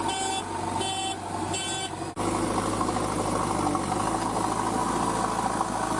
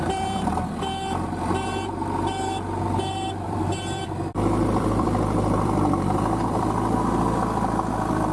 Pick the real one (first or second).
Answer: first